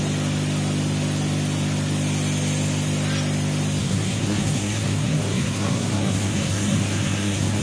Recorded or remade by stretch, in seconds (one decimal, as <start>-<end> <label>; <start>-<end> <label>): 0.0-3.8 recorded; 3.8-7.6 remade